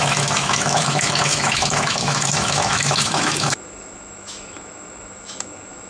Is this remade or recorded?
remade